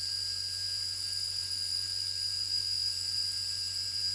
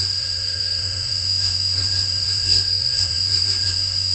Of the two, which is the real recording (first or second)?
first